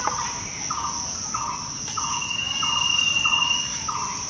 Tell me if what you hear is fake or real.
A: real